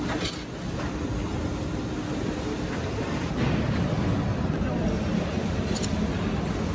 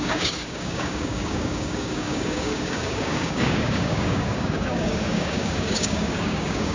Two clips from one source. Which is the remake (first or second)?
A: second